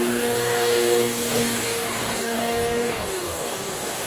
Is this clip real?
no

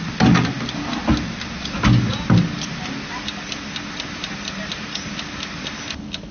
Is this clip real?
yes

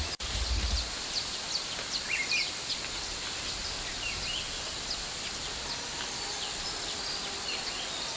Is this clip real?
yes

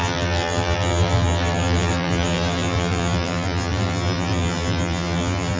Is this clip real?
no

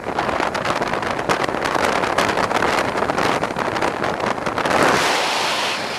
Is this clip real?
yes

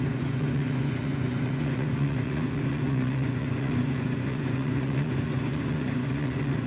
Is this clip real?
no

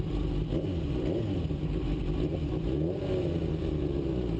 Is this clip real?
yes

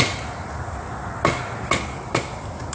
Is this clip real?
yes